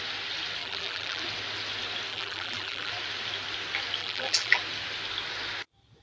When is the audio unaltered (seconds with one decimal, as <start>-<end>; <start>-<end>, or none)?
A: 0.0-0.6; 1.2-2.1; 2.9-4.0; 4.6-6.0